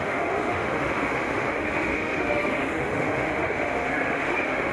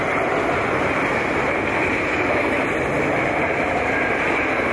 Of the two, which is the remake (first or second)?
first